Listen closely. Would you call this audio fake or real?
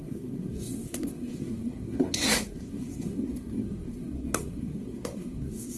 fake